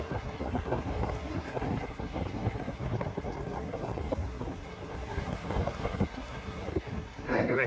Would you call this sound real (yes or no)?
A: no